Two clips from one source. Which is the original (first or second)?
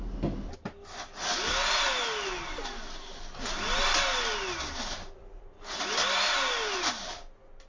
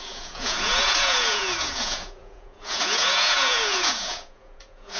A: first